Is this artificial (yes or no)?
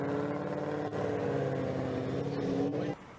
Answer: no